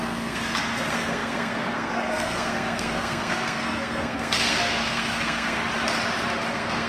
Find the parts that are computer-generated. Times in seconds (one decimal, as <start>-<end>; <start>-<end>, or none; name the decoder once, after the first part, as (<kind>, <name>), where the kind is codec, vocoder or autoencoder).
0.0-5.6 (codec, SNAC); 6.5-6.9

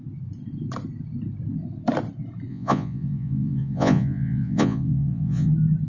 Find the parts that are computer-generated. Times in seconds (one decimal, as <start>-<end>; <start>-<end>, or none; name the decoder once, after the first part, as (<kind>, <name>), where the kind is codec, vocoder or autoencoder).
2.5-5.5 (vocoder, Vocos)

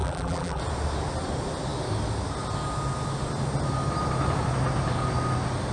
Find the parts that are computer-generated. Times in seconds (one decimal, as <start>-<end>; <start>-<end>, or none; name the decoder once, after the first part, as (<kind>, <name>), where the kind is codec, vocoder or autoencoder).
0.0-0.6 (vocoder, BigVGAN v2)

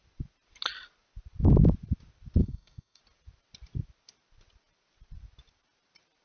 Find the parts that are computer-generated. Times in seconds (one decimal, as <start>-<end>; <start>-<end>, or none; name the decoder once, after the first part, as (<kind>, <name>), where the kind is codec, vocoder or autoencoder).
2.4-3.0 (codec, DAC)

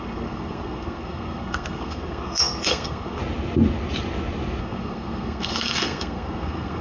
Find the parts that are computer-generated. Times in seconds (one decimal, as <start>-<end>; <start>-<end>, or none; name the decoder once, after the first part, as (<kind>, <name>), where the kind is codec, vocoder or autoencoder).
0.0-3.2 (codec, SNAC); 4.6-6.8

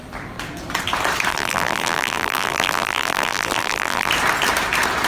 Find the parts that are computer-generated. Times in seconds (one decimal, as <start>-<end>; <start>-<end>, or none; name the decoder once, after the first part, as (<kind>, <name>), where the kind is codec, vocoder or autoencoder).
1.3-4.1 (vocoder, BigVGAN v2)

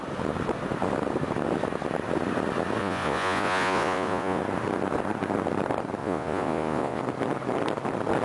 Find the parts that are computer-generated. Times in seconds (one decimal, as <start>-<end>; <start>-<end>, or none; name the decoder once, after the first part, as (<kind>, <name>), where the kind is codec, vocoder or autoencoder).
2.8-4.4 (vocoder, Vocos); 6.0-7.0